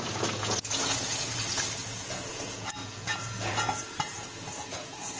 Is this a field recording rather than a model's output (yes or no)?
no